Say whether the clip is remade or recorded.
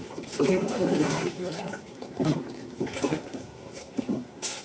remade